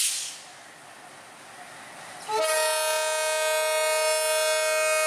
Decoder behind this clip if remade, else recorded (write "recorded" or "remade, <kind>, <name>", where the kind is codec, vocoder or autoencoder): recorded